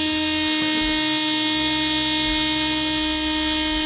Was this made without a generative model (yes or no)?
yes